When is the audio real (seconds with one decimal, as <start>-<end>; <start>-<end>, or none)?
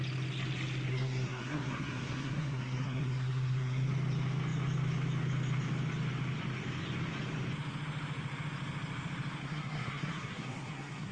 0.0-0.9; 3.9-9.4